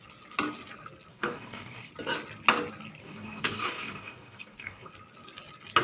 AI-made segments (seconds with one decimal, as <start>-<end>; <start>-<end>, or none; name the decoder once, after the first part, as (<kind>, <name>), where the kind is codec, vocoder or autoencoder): 1.1-1.9 (codec, DAC); 3.0-4.9